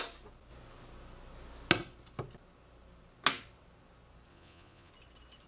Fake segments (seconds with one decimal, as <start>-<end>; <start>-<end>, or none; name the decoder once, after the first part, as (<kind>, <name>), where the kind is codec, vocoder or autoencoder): 4.3-4.9 (vocoder, Vocos)